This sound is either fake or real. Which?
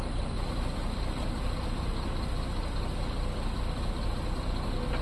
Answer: real